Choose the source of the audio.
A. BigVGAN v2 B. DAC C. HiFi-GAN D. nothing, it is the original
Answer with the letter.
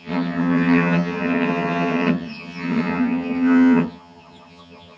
C